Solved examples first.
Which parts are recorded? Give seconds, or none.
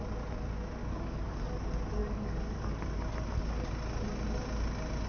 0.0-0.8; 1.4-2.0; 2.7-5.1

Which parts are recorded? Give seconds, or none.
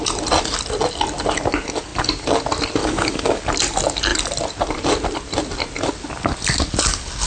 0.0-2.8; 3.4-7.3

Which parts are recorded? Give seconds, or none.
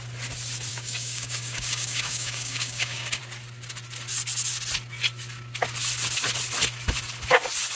0.0-0.7; 3.2-7.7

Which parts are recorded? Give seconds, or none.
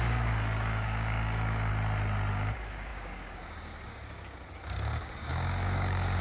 1.7-2.3